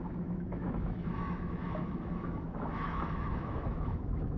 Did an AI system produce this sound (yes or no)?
yes